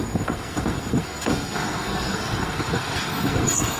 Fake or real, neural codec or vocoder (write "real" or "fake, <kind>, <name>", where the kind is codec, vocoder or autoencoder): fake, codec, SNAC